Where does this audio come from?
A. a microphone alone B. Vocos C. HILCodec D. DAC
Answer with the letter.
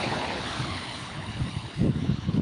C